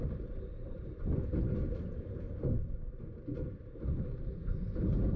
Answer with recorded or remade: recorded